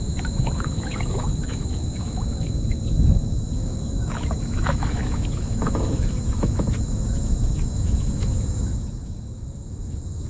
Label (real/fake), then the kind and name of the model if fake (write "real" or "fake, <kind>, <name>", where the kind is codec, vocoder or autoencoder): fake, autoencoder, DAC-VAE